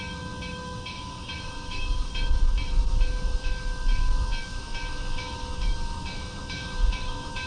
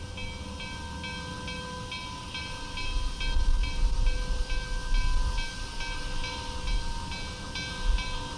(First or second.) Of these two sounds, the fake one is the first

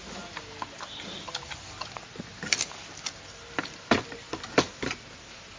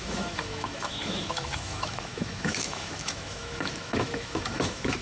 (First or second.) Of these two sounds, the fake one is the second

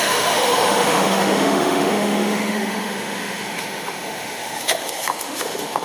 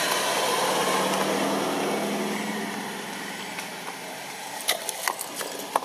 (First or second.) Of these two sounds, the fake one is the first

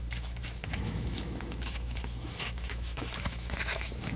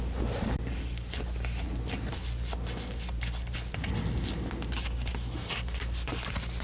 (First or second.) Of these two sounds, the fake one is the first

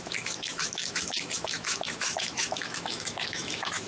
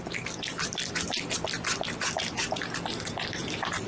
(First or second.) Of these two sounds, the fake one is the first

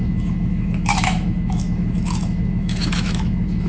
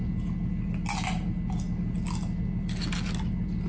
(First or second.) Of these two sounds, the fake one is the first